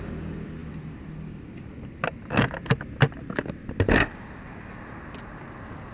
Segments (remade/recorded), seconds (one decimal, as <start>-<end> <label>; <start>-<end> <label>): 0.0-5.9 recorded